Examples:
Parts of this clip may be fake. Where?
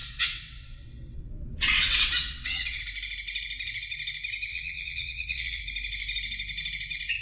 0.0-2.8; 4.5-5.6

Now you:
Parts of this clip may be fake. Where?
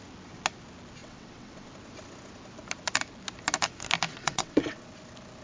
1.0-1.7; 4.1-4.8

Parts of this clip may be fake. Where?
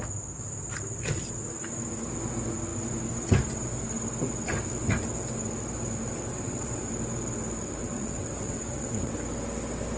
6.3-6.9; 7.8-9.1